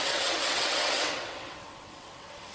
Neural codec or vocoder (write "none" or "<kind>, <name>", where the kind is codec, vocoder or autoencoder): vocoder, WaveNeXt